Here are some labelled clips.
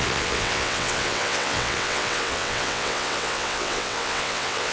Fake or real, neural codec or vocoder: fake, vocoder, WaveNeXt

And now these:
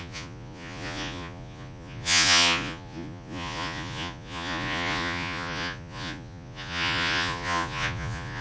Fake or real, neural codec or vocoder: fake, vocoder, Vocos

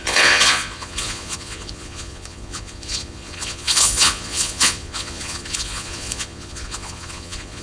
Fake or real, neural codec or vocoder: fake, vocoder, Vocos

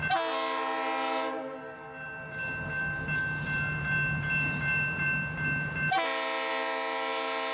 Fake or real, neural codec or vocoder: real